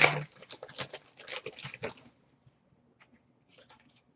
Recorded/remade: recorded